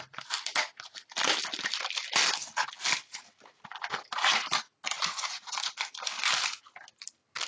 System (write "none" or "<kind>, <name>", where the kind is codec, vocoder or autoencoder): none